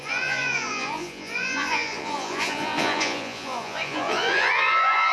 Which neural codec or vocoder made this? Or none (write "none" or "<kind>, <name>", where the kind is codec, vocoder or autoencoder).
vocoder, Vocos